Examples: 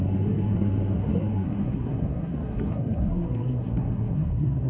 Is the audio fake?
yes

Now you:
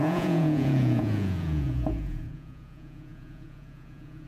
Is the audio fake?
yes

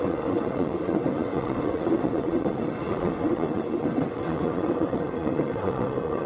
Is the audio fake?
yes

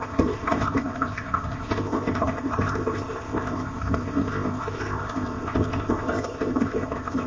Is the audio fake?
yes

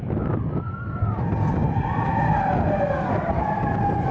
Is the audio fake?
no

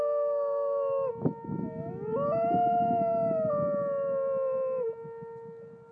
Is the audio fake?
no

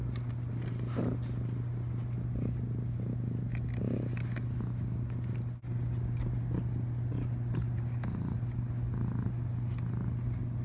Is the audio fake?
no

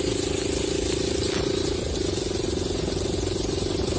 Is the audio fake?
no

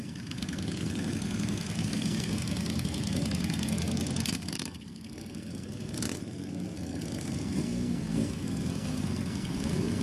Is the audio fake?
yes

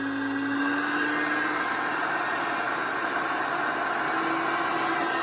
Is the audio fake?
no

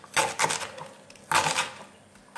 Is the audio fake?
no